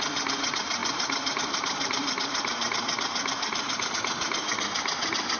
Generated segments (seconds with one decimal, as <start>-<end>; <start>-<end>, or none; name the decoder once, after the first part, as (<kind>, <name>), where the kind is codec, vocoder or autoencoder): 0.0-5.4 (vocoder, BigVGAN v2)